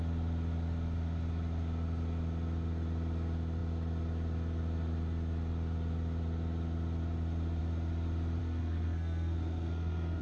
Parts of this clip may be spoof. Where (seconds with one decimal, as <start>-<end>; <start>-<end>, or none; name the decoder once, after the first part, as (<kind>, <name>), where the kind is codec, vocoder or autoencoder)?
8.4-10.2 (codec, SNAC)